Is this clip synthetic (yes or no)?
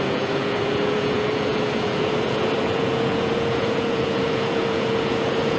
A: yes